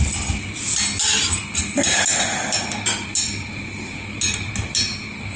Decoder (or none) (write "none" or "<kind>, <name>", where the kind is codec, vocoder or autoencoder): none